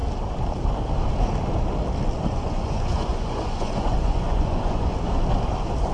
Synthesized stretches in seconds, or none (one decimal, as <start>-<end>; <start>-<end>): 2.3-5.1